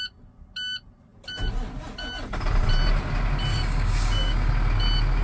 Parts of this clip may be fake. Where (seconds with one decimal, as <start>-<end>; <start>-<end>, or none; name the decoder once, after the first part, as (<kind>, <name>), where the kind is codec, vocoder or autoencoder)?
3.5-4.5 (codec, DAC)